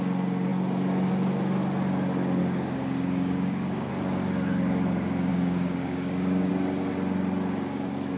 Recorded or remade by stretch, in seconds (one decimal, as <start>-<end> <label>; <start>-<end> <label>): 0.0-2.4 recorded; 2.4-3.9 remade; 3.9-5.3 recorded; 5.3-6.5 remade; 6.5-8.2 recorded